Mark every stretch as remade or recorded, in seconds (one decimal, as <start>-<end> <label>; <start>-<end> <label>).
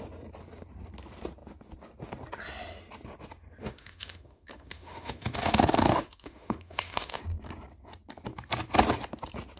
0.0-3.6 recorded; 3.6-7.2 remade; 7.2-9.6 recorded